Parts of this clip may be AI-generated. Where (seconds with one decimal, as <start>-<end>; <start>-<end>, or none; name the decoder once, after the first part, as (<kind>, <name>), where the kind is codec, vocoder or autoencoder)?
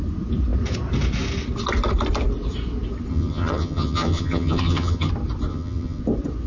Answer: 3.1-5.1 (vocoder, HiFi-GAN); 5.5-6.0